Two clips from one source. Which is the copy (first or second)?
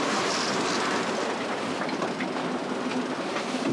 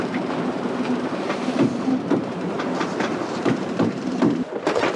second